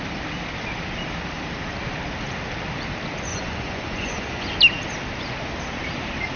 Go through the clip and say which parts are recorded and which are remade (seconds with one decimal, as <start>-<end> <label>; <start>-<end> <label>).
0.0-3.3 recorded; 3.3-4.6 remade; 4.6-6.4 recorded